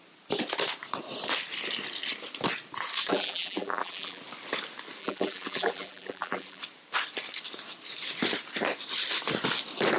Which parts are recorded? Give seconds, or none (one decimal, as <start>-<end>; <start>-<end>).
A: 0.0-3.1; 4.2-5.0; 6.6-10.0